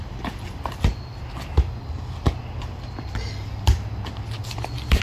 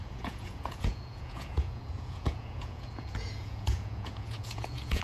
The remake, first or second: second